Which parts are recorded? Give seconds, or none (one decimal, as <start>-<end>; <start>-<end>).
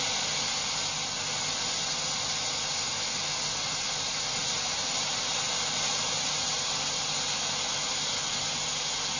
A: 0.0-9.2